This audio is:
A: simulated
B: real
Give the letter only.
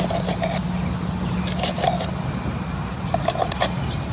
B